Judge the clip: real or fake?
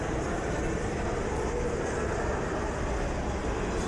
real